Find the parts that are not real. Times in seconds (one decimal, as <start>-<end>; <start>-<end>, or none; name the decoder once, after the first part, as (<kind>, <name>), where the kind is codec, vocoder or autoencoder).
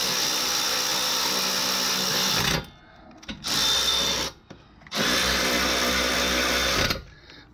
none